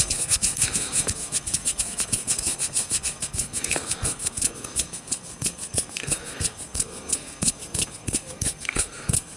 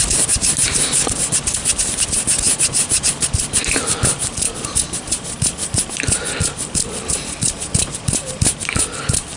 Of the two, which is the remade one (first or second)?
first